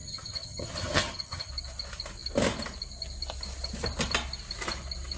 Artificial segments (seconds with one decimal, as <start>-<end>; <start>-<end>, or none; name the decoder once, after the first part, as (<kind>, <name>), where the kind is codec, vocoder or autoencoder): 0.0-1.5 (vocoder, HiFi-GAN)